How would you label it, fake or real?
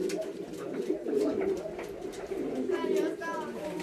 real